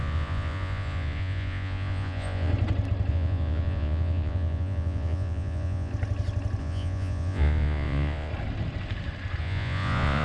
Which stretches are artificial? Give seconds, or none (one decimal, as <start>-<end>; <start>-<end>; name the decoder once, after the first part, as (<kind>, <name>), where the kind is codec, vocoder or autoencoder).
0.0-2.5 (vocoder, Vocos); 3.1-5.9; 6.6-8.3; 9.4-10.2